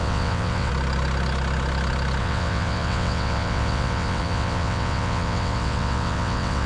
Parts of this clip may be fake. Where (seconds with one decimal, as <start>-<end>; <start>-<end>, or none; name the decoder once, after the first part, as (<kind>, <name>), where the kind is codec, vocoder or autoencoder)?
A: 0.0-0.7 (vocoder, WaveNeXt); 2.2-6.7